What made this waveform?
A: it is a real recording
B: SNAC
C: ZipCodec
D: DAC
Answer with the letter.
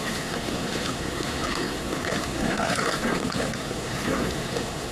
B